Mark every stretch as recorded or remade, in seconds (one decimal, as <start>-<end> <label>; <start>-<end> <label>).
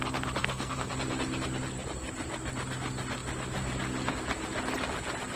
0.0-0.4 recorded; 0.4-0.9 remade; 0.9-5.4 recorded